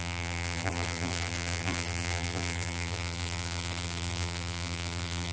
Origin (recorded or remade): remade